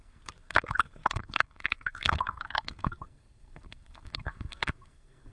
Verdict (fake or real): fake